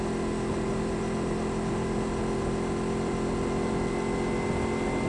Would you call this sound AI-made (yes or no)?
no